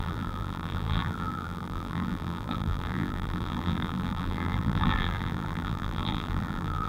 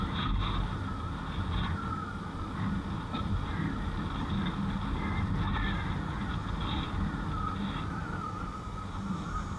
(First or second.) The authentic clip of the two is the second